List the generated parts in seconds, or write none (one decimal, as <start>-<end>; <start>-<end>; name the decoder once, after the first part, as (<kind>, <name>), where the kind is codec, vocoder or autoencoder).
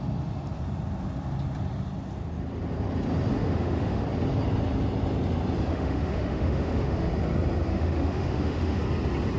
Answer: 3.3-4.0 (autoencoder, DAC-VAE); 5.7-7.1; 7.7-8.8